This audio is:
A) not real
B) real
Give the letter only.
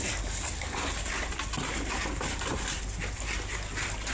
B